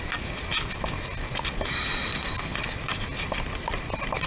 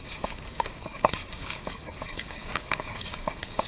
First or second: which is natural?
first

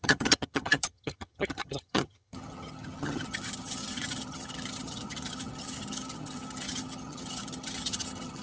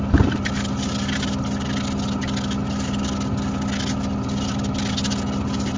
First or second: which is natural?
second